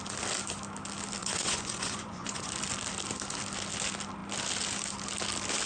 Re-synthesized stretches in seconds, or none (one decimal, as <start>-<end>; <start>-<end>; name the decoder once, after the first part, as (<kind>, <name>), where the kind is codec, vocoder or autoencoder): 1.2-2.5 (vocoder, Vocos)